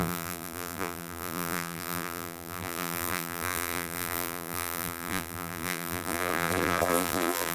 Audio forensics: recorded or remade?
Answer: remade